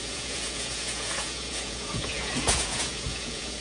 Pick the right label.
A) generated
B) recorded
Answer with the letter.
A